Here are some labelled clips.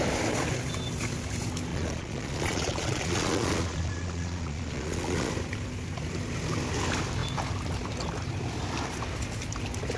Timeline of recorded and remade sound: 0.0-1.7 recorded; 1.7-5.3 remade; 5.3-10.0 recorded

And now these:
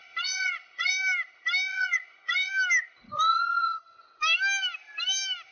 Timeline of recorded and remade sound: 0.0-0.9 remade; 0.9-1.7 recorded; 1.7-2.5 remade; 2.5-3.3 recorded; 3.3-4.2 remade; 4.2-5.5 recorded

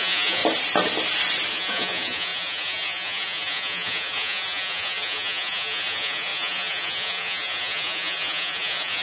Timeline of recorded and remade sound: 0.0-0.4 remade; 0.4-1.5 recorded; 1.5-9.0 remade